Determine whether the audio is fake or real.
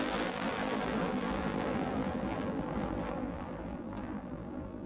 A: fake